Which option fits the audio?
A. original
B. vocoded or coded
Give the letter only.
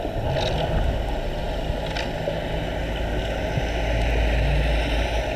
A